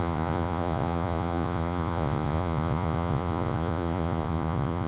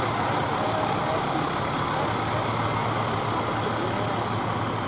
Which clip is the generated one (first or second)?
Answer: first